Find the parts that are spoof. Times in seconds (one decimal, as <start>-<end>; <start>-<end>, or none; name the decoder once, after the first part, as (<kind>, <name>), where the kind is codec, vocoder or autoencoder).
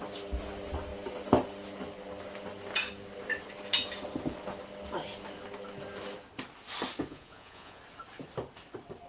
7.1-7.8 (vocoder, Vocos)